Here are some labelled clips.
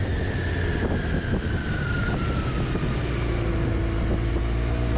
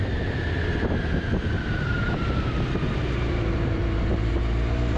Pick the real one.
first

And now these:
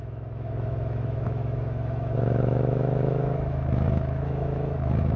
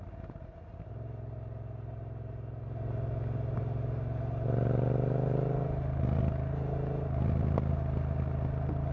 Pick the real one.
second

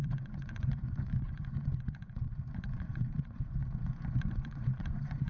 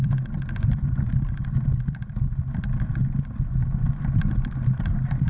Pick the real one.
second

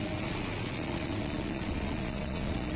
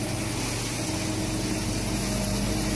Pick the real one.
second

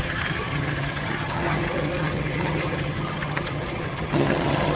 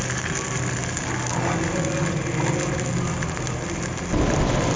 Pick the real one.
second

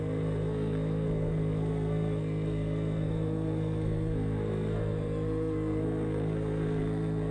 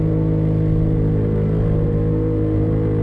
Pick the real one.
second